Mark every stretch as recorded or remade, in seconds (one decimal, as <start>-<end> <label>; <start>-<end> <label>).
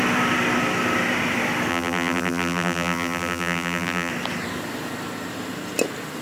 0.0-1.7 recorded; 1.7-4.1 remade; 4.1-6.2 recorded